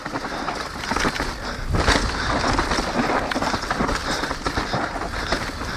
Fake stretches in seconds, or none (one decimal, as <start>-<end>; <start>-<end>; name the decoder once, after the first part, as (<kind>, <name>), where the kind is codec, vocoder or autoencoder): none